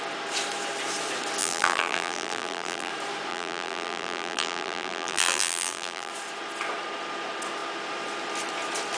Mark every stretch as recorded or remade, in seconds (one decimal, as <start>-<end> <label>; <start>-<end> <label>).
0.0-1.4 recorded; 1.4-2.9 remade; 2.9-3.3 recorded; 3.3-6.1 remade; 6.1-9.0 recorded